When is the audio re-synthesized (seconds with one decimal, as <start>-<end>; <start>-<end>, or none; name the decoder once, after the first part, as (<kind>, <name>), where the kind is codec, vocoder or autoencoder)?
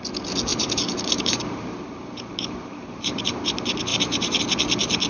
0.5-3.2 (vocoder, BigVGAN v2); 3.9-4.4